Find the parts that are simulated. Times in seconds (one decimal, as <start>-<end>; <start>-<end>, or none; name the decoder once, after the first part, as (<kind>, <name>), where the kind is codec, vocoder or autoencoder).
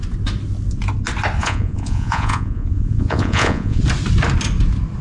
1.4-3.8 (vocoder, Vocos)